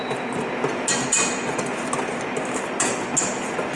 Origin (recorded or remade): recorded